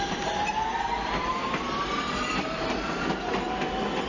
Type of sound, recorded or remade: recorded